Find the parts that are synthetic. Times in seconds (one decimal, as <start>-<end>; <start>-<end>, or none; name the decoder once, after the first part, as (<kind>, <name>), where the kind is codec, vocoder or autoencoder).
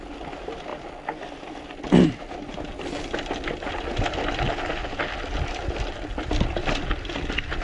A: 0.7-1.7 (vocoder, BigVGAN v2); 6.1-7.1